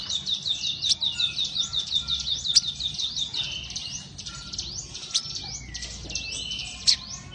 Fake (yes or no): no